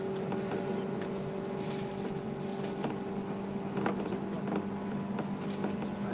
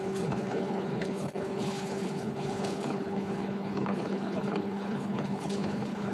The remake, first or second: second